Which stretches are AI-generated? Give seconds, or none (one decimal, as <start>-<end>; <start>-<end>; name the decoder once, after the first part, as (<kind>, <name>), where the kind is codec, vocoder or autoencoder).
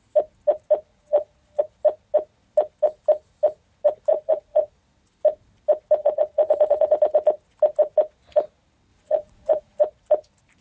0.9-1.6 (vocoder, Vocos); 4.1-4.7; 6.0-6.9; 8.9-9.8